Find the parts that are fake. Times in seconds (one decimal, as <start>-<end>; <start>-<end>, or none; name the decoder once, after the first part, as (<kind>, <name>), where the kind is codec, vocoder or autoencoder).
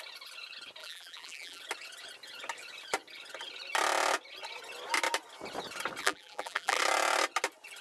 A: 0.8-1.6 (vocoder, BigVGAN v2); 6.0-6.8